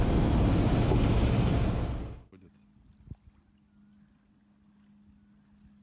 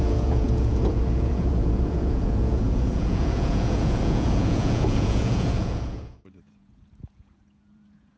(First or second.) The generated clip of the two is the second